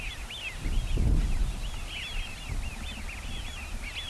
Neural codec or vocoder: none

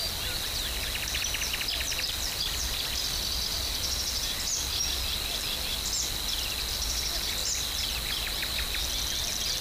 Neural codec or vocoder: none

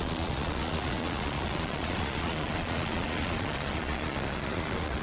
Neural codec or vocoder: vocoder, Vocos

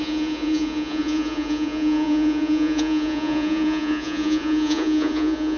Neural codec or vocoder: vocoder, Vocos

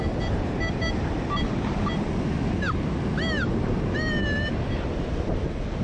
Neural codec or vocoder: none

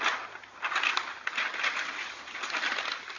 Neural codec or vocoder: none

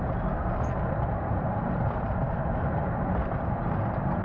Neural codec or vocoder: none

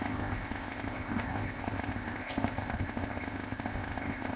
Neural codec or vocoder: codec, ZipCodec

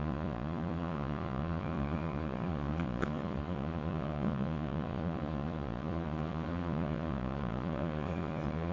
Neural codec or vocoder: vocoder, Vocos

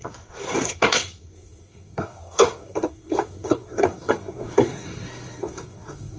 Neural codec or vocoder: codec, SNAC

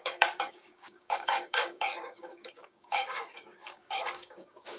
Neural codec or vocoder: codec, DAC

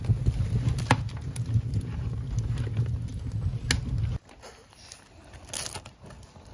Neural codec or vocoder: none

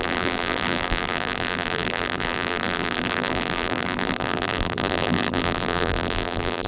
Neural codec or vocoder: vocoder, BigVGAN v2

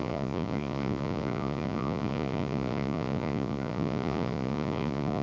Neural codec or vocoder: vocoder, Vocos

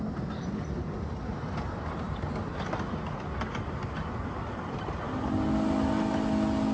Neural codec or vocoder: none